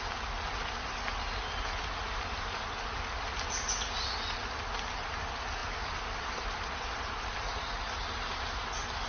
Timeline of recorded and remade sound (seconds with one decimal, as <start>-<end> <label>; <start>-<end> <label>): 0.0-9.1 recorded